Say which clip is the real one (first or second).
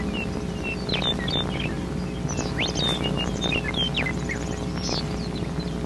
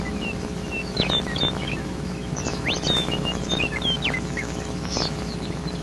first